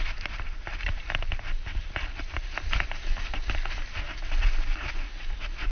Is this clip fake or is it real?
real